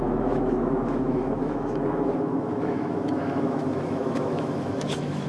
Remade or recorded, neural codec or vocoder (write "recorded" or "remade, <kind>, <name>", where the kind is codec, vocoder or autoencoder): remade, autoencoder, DAC-VAE